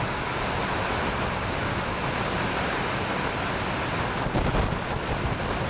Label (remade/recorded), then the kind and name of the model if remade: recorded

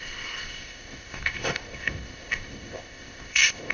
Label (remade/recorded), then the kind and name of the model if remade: remade, codec, ZipCodec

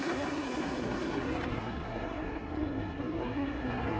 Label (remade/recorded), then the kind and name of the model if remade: remade, codec, SNAC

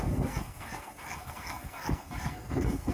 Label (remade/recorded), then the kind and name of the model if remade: remade, codec, SNAC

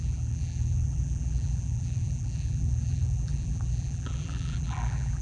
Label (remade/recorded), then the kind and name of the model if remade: remade, vocoder, BigVGAN v2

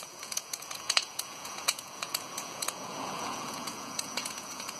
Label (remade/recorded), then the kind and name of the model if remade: remade, vocoder, Vocos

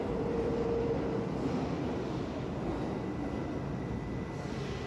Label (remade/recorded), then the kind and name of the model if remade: recorded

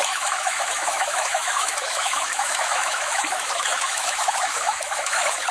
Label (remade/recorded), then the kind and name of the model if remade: remade, autoencoder, DAC-VAE